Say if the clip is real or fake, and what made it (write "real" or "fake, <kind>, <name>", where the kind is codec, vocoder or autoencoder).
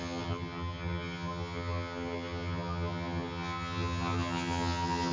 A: fake, vocoder, HiFi-GAN